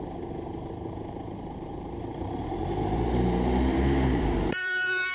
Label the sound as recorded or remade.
remade